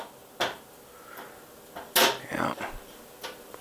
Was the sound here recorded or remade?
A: recorded